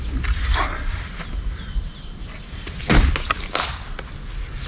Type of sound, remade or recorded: recorded